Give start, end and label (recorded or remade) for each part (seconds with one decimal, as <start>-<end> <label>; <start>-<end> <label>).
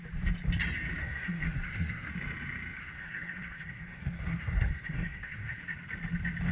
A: 0.0-1.0 recorded; 1.0-2.1 remade; 2.1-2.8 recorded; 2.8-5.6 remade; 5.6-6.5 recorded